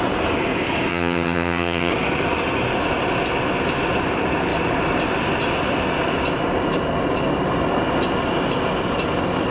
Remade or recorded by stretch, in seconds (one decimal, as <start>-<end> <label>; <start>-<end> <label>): 0.0-0.9 recorded; 0.9-1.9 remade; 1.9-9.5 recorded